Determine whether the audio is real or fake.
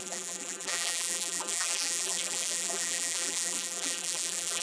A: fake